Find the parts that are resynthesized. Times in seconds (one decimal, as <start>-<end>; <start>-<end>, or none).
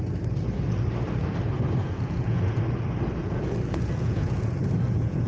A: 1.8-2.6; 3.2-5.3